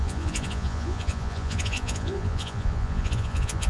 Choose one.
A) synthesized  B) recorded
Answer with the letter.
A